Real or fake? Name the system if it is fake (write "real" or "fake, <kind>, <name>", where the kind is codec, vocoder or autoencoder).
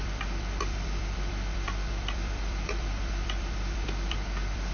fake, vocoder, BigVGAN v2